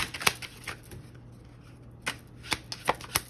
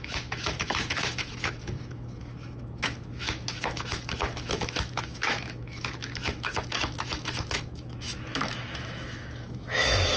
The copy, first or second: second